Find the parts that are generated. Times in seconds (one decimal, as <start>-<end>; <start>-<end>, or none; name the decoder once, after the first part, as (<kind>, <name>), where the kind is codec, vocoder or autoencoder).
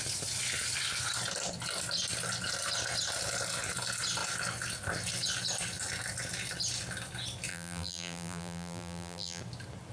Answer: 7.5-9.4 (vocoder, BigVGAN v2)